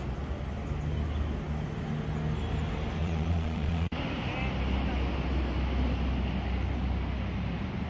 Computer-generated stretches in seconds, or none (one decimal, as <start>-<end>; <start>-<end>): 3.0-3.9

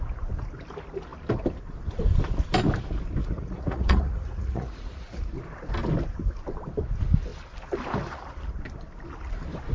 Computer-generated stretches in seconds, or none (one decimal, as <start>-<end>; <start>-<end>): 3.2-5.2

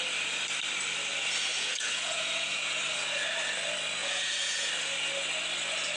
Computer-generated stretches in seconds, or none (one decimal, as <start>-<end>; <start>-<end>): 1.5-2.8; 4.0-4.7

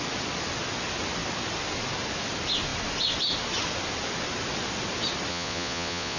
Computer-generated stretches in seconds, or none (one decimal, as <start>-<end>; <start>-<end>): 5.3-6.2

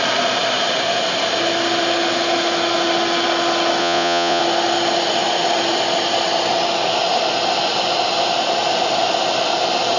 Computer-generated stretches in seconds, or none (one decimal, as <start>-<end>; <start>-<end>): 3.8-4.4

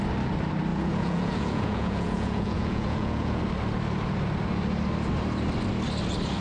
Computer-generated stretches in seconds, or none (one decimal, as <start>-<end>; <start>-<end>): 0.7-3.4